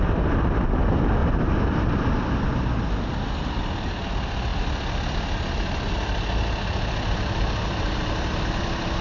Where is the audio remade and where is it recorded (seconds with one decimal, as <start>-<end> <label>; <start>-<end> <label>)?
0.0-9.0 recorded